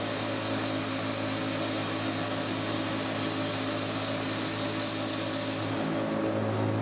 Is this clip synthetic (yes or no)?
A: no